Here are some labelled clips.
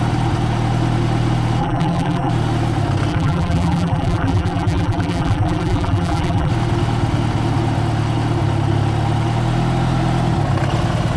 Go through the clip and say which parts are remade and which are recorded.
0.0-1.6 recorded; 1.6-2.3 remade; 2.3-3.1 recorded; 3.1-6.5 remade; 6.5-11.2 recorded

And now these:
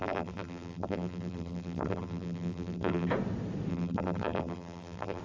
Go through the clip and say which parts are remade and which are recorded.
0.0-3.1 remade; 3.1-3.7 recorded; 3.7-5.2 remade

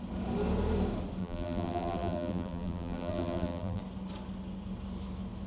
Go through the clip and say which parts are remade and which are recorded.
0.0-1.2 recorded; 1.2-3.8 remade; 3.8-5.5 recorded

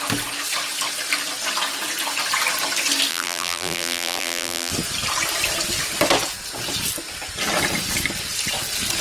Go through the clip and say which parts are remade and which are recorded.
0.0-3.1 recorded; 3.1-4.7 remade; 4.7-9.0 recorded

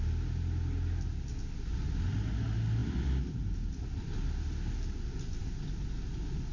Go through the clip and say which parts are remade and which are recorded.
0.0-2.8 recorded; 2.8-4.1 remade; 4.1-6.5 recorded